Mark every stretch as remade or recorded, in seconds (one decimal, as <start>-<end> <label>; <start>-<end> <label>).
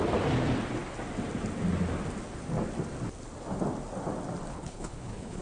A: 0.0-4.5 recorded; 4.5-5.4 remade